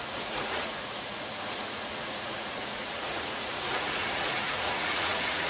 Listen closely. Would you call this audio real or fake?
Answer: fake